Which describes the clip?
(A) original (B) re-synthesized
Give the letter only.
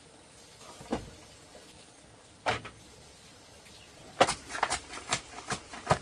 A